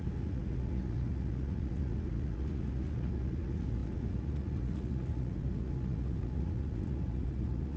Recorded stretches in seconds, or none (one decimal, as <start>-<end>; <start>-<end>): none